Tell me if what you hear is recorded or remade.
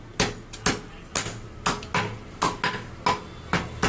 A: recorded